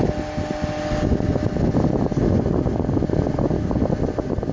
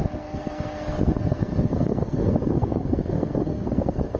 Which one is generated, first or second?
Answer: second